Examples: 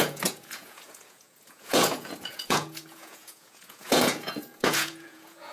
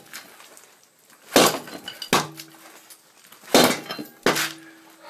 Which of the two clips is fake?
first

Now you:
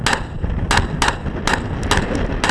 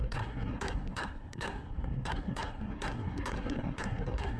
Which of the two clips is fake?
second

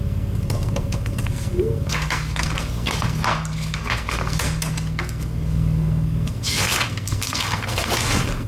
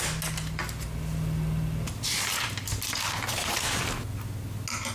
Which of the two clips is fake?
first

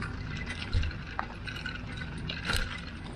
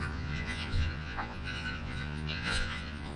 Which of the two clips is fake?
second